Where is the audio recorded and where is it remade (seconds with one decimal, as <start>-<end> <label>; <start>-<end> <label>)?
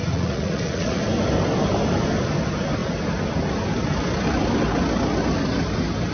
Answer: 0.0-1.0 remade; 1.0-6.1 recorded